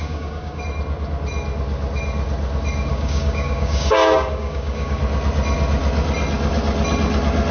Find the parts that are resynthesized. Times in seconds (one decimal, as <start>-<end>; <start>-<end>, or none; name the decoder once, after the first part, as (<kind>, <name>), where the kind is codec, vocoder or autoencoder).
0.0-0.6 (codec, DAC); 2.9-5.0